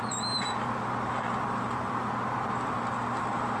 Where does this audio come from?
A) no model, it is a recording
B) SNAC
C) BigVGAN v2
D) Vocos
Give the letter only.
C